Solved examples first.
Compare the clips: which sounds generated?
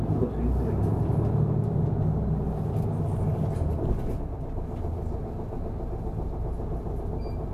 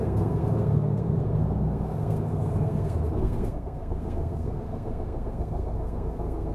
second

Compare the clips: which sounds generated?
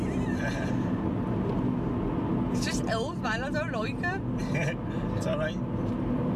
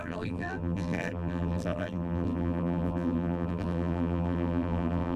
second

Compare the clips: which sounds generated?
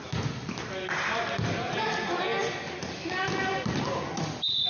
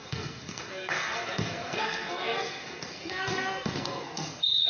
second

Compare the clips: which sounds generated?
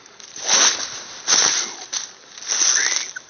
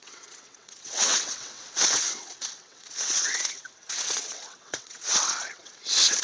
second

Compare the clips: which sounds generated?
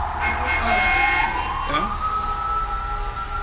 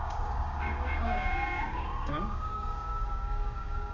second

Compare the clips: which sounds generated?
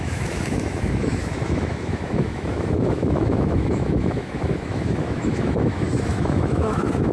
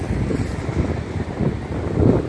first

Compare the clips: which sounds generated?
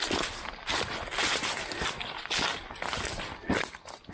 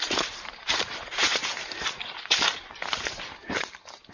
second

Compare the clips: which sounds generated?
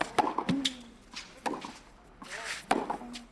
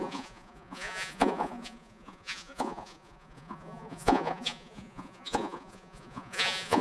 second